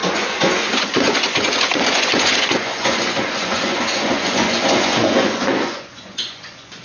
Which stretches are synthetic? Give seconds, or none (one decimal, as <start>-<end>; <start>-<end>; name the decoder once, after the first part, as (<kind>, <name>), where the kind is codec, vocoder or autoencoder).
0.0-6.8 (vocoder, Vocos)